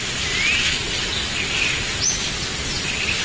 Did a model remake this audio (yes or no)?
no